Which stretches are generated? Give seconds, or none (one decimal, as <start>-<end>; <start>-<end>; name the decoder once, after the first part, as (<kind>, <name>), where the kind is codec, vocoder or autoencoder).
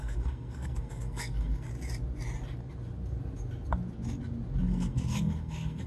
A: 0.0-1.7 (codec, SNAC); 4.6-5.9